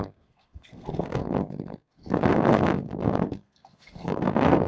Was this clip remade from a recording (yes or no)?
yes